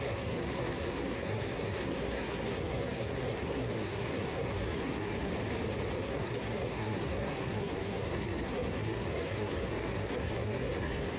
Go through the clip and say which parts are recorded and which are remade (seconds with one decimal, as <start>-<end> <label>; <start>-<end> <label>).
0.0-5.3 remade; 5.3-6.0 recorded; 6.0-11.2 remade